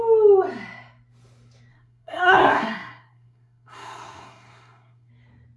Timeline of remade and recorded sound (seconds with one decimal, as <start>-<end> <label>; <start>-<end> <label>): 0.0-1.7 recorded; 1.7-5.1 remade; 5.1-5.6 recorded